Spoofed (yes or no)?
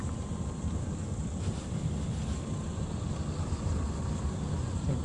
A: no